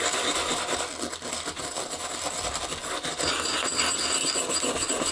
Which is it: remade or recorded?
recorded